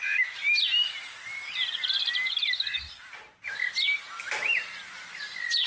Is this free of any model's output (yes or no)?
yes